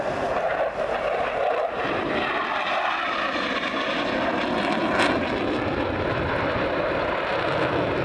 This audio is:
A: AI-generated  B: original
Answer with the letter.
B